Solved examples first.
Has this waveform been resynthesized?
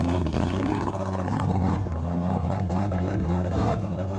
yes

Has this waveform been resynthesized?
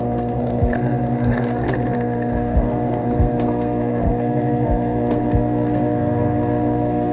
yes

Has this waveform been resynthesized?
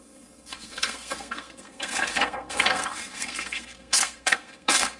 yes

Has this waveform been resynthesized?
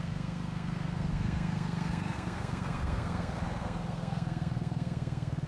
yes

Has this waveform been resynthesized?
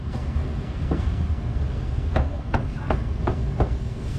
yes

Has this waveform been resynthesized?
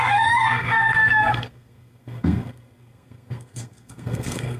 yes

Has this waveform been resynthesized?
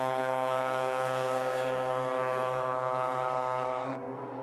yes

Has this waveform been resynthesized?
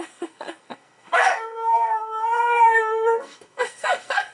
yes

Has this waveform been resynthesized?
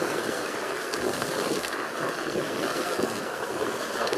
yes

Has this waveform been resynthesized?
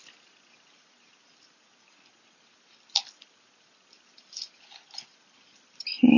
no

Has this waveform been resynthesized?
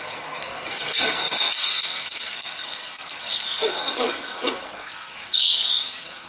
yes